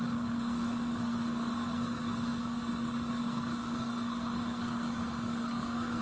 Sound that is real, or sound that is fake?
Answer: fake